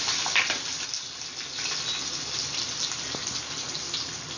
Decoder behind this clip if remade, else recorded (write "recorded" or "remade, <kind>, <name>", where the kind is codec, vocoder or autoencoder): recorded